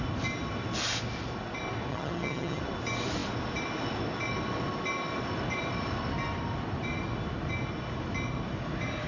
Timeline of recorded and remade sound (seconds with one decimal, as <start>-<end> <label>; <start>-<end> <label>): 0.0-1.9 recorded; 1.9-2.6 remade; 2.6-9.1 recorded